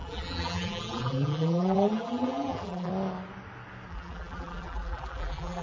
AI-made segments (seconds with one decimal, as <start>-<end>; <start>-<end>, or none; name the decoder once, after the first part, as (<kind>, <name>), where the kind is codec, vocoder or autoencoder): 0.0-2.9 (vocoder, BigVGAN v2); 3.9-5.6